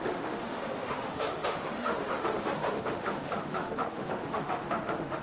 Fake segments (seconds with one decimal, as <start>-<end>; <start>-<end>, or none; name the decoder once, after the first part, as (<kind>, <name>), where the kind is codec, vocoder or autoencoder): 0.0-5.2 (autoencoder, DAC-VAE)